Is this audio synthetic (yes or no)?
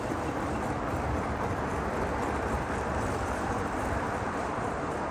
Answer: yes